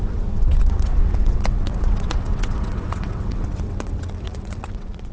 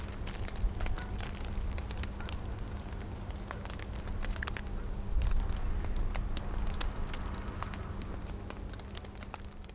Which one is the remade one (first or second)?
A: first